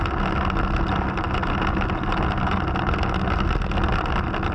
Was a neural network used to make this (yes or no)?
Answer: no